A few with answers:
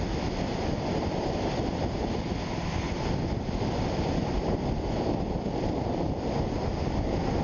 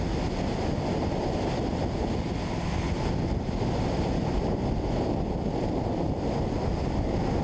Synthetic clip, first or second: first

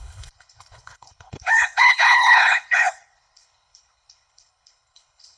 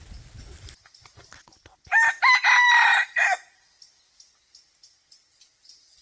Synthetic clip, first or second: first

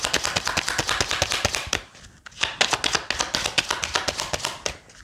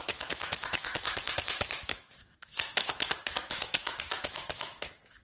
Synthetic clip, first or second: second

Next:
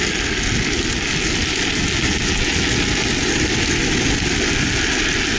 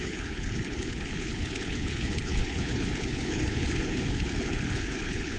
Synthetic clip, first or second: second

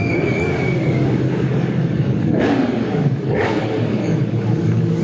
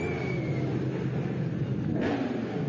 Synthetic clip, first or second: first